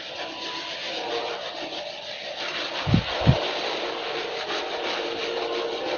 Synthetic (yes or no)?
yes